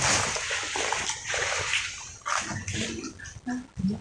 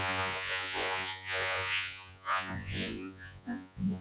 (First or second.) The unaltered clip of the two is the first